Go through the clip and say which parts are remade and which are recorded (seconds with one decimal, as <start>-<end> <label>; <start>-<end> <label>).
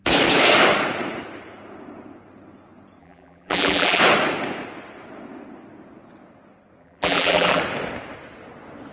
0.0-3.0 recorded; 3.0-4.0 remade; 4.0-6.8 recorded; 6.8-7.6 remade; 7.6-8.9 recorded